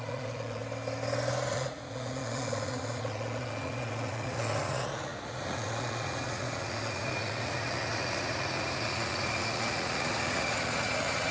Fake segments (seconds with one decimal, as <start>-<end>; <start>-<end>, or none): 0.0-0.6; 1.5-11.3